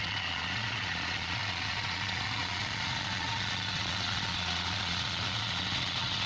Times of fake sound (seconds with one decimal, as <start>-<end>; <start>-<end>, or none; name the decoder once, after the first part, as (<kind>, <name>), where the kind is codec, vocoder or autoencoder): 0.0-6.3 (vocoder, Vocos)